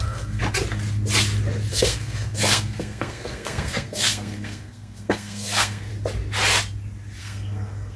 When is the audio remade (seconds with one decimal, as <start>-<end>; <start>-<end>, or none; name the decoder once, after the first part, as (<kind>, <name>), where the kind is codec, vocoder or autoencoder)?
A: 0.0-0.4 (codec, SNAC); 1.7-5.9; 7.2-8.0